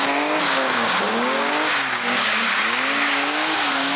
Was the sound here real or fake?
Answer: fake